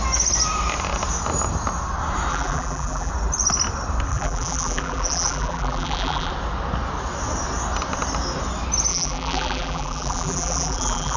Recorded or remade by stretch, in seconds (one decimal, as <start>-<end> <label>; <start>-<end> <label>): 0.0-2.3 recorded; 2.3-3.1 remade; 3.1-4.1 recorded; 4.1-6.3 remade; 6.3-8.9 recorded; 8.9-11.2 remade